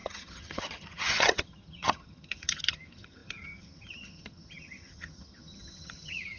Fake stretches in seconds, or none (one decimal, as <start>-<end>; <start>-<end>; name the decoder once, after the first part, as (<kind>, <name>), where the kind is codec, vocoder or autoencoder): 0.0-6.4 (vocoder, HiFi-GAN)